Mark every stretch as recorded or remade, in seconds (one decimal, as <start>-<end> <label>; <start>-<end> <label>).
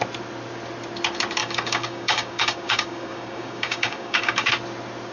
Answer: 0.0-1.4 recorded; 1.4-4.5 remade; 4.5-5.1 recorded